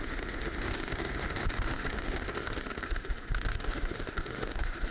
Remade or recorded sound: remade